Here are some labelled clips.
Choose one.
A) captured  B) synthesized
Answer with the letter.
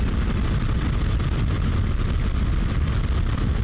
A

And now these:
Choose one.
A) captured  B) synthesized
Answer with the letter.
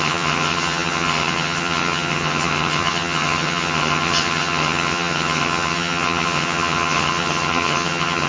B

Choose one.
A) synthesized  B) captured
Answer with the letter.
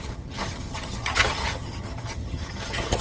A